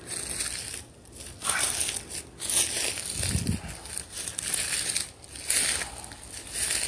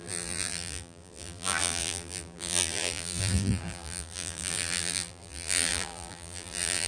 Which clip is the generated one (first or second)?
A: second